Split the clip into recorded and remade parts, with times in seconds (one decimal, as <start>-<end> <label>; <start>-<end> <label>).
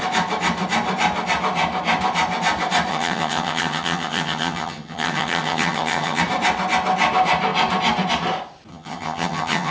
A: 0.0-2.9 recorded; 2.9-6.2 remade; 6.2-8.7 recorded; 8.7-9.7 remade